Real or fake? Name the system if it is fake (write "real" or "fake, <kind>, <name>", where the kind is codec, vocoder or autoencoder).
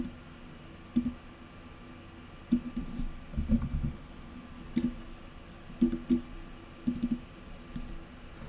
real